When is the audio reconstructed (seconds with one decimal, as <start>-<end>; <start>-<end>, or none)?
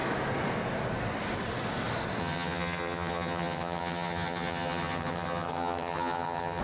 2.2-6.6